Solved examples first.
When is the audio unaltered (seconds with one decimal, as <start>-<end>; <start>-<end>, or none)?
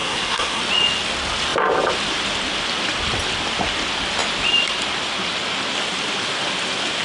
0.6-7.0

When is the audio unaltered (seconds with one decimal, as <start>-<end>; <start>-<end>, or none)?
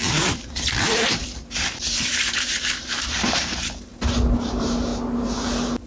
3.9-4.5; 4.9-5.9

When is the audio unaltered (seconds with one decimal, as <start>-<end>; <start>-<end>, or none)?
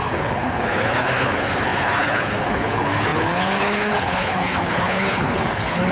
none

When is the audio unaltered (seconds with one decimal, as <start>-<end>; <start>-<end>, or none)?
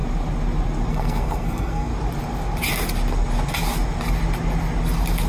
0.0-0.9; 1.9-5.3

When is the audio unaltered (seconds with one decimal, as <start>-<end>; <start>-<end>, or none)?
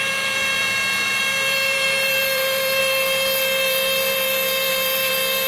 none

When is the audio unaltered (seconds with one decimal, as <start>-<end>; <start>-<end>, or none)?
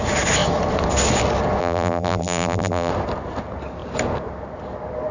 0.0-1.6; 2.9-5.1